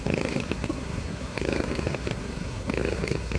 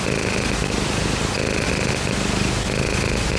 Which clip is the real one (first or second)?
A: second